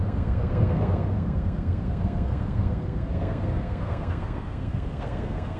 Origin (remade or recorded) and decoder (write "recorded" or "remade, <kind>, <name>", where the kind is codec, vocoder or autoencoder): remade, codec, SNAC